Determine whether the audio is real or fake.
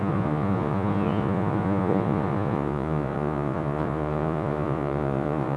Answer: fake